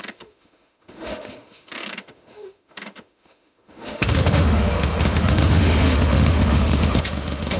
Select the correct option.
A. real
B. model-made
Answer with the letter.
B